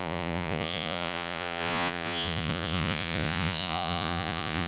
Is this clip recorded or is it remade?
remade